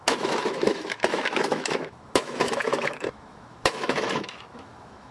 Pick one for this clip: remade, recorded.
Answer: remade